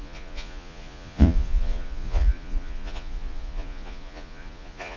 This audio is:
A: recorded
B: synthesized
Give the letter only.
B